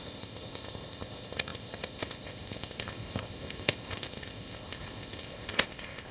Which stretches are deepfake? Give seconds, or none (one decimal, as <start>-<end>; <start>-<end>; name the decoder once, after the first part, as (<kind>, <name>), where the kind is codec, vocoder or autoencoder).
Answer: 0.0-6.1 (codec, ZipCodec)